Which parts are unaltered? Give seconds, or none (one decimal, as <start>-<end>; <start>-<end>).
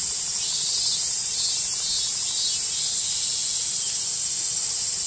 0.0-5.1